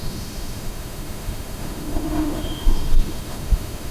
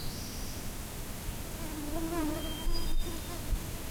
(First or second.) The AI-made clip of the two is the first